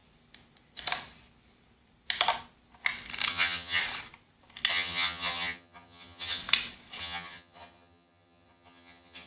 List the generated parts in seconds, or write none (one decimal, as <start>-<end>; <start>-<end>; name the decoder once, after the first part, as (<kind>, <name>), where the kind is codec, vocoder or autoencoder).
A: 3.3-3.8 (vocoder, HiFi-GAN); 4.7-6.4; 7.0-9.3